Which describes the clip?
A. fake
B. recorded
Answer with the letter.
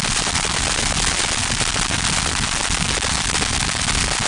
B